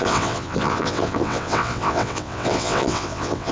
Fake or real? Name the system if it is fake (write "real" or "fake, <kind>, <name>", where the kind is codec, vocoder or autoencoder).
fake, vocoder, WaveNeXt